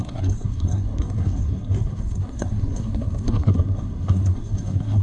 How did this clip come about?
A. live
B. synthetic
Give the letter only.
B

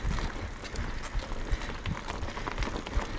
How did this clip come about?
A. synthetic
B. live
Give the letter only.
B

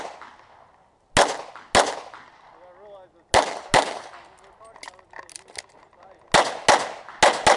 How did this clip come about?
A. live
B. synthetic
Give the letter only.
A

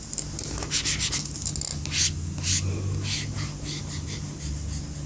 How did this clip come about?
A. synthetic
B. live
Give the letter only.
B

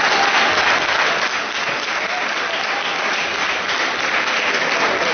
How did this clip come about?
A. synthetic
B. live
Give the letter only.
B